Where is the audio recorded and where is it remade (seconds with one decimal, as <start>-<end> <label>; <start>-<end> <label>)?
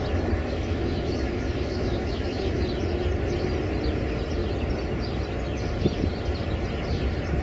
0.0-0.4 recorded; 0.4-2.6 remade; 2.6-7.4 recorded